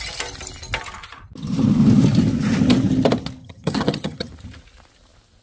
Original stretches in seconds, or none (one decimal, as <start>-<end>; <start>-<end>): 0.0-3.4; 4.3-5.4